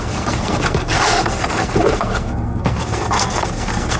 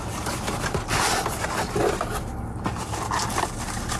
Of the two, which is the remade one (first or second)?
first